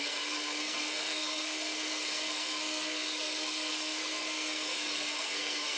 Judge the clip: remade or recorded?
remade